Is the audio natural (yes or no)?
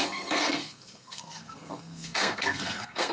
no